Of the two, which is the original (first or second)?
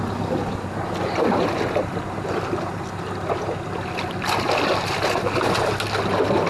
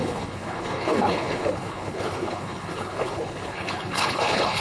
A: first